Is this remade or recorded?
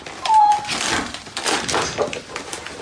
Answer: recorded